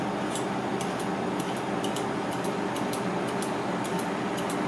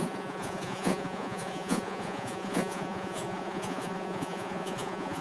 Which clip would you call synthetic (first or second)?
second